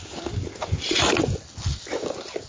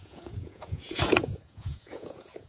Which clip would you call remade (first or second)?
second